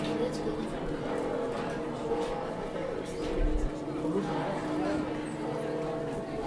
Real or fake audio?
real